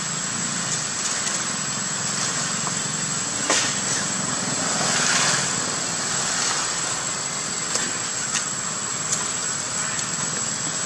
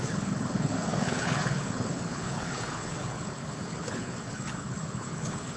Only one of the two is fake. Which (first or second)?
second